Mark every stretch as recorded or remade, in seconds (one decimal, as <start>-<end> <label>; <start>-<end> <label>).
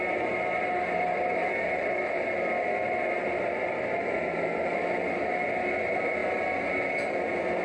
0.0-7.6 recorded